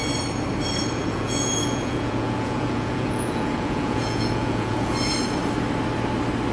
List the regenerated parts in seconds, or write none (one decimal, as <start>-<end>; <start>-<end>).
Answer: 1.0-4.9